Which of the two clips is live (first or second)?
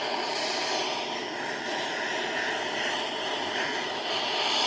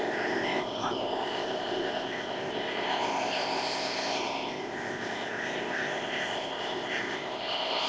first